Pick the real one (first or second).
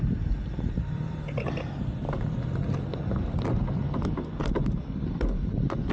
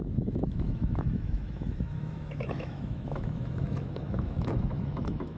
first